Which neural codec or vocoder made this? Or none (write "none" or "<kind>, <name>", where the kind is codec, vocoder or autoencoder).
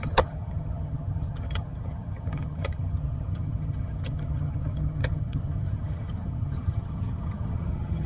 vocoder, HiFi-GAN